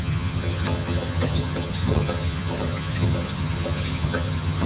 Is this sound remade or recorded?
remade